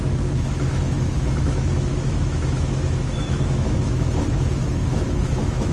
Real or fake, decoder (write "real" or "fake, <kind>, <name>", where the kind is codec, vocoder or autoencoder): fake, autoencoder, DAC-VAE